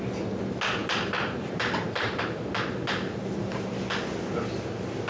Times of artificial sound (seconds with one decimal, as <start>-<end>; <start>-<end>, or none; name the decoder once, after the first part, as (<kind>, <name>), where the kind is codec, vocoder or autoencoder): 0.8-3.7 (vocoder, BigVGAN v2)